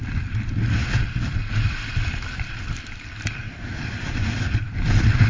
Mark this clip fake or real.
fake